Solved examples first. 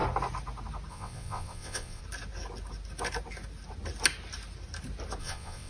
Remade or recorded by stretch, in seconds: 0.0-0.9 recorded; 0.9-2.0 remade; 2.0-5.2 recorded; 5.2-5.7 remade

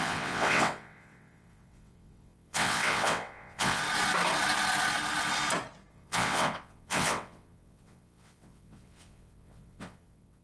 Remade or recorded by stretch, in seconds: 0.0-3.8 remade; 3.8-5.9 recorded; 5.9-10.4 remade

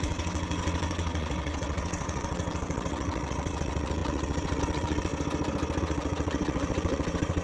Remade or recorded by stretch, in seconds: 0.0-5.1 remade; 5.1-5.8 recorded; 5.8-7.4 remade

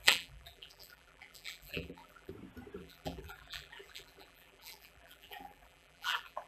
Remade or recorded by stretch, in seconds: 0.0-2.3 remade; 2.3-2.8 recorded; 2.8-6.5 remade

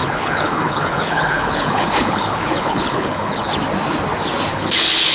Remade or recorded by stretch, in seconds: 0.0-3.5 remade; 3.5-4.5 recorded; 4.5-5.1 remade

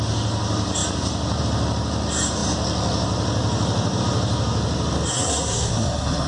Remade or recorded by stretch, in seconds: 0.0-5.1 recorded; 5.1-6.3 remade

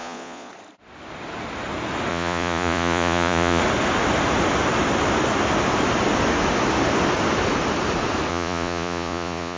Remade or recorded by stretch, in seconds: 0.0-0.5 remade; 0.5-2.1 recorded; 2.1-3.6 remade; 3.6-8.3 recorded; 8.3-9.6 remade

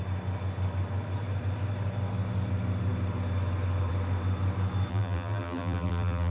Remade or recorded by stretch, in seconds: 0.0-4.9 recorded; 4.9-6.3 remade